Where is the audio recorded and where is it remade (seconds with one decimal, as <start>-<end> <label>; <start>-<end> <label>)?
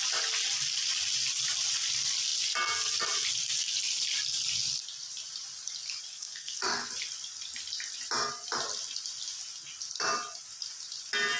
0.0-6.1 recorded; 6.1-6.9 remade; 6.9-11.4 recorded